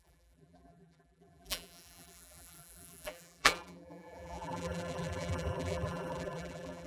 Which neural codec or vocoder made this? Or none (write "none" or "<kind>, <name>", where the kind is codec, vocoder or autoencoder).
vocoder, BigVGAN v2